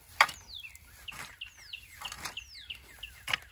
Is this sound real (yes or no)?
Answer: yes